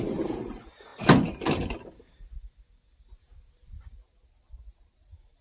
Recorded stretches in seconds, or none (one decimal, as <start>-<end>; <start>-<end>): 0.0-5.4